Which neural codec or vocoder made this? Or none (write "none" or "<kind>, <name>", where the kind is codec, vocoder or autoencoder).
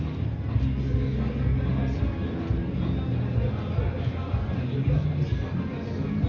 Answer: none